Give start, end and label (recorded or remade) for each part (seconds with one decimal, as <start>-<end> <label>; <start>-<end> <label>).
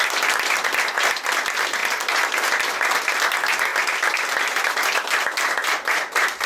0.0-6.5 recorded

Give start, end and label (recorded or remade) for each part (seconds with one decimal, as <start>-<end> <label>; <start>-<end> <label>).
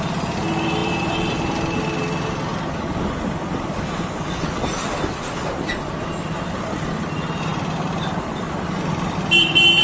0.0-0.8 recorded; 0.8-1.4 remade; 1.4-9.8 recorded